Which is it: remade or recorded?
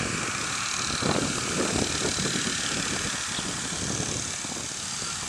recorded